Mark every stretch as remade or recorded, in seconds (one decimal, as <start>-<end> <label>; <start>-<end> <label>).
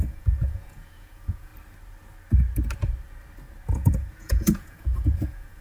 0.0-1.5 remade; 1.5-3.7 recorded; 3.7-5.6 remade